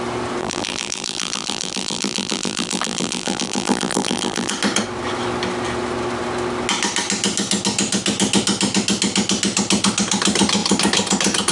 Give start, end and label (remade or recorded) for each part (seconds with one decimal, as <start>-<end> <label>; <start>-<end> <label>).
0.0-0.4 recorded; 0.4-4.5 remade; 4.5-11.5 recorded